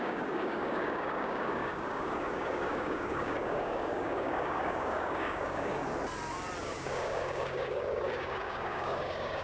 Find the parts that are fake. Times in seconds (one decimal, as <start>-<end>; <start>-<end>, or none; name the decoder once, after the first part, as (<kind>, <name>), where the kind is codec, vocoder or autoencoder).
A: 0.0-5.8 (codec, DAC); 6.6-9.4